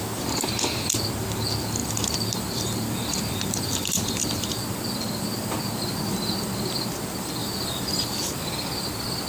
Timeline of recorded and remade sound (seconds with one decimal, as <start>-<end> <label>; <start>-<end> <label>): 0.0-1.8 recorded; 1.8-5.8 remade; 5.8-7.4 recorded; 7.4-8.4 remade; 8.4-9.3 recorded